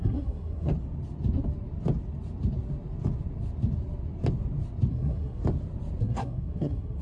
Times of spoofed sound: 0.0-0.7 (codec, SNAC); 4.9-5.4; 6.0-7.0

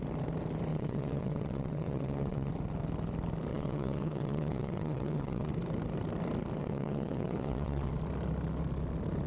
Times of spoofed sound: 0.7-2.5 (vocoder, WaveNeXt); 3.5-5.5; 6.6-7.9